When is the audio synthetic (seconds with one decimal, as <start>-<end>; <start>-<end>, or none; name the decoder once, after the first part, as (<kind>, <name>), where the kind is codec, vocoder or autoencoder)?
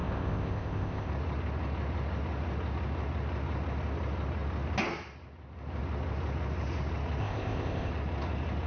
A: 0.0-1.1 (codec, ZipCodec); 7.2-7.9